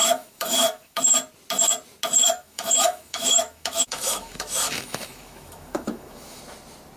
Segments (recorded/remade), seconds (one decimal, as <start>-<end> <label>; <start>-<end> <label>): 0.0-1.0 remade; 1.0-2.2 recorded; 2.2-6.4 remade; 6.4-7.0 recorded